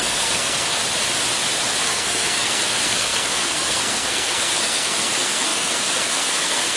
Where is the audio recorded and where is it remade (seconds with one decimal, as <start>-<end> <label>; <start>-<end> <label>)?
0.0-0.8 remade; 0.8-1.8 recorded; 1.8-6.8 remade